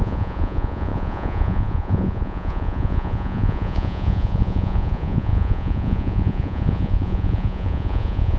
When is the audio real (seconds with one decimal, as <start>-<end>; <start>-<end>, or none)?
none